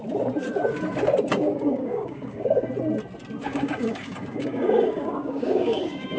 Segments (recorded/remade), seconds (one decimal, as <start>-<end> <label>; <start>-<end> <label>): 0.0-1.3 recorded; 1.3-2.7 remade; 2.7-3.5 recorded; 3.5-6.2 remade